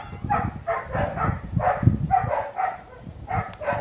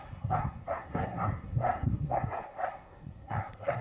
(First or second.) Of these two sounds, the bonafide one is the first